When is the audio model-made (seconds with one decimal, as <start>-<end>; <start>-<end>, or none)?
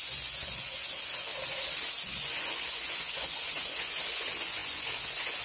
0.0-1.3; 2.0-5.4